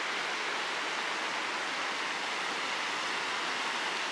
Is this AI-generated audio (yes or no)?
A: no